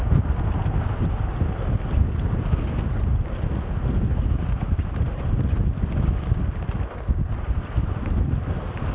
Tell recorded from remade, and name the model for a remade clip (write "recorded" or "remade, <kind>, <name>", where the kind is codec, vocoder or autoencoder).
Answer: recorded